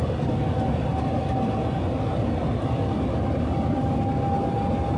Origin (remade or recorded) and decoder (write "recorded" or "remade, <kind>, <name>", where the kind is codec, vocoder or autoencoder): recorded